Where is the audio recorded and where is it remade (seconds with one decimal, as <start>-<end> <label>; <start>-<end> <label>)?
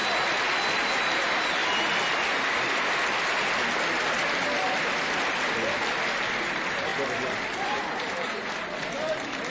0.0-1.0 recorded; 1.0-1.6 remade; 1.6-6.4 recorded; 6.4-6.9 remade; 6.9-7.6 recorded; 7.6-9.5 remade